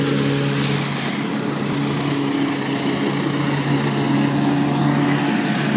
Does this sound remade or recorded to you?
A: recorded